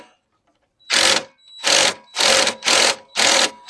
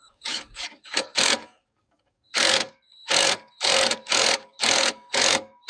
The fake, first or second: second